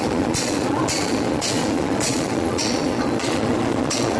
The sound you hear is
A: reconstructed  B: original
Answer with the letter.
A